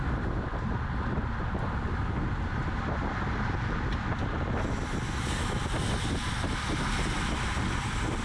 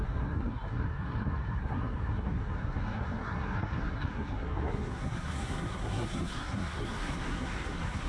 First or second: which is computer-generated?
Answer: second